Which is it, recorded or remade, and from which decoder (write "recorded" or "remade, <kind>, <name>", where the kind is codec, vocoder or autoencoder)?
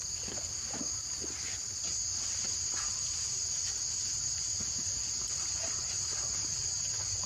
recorded